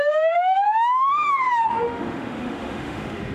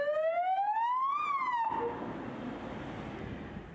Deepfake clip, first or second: first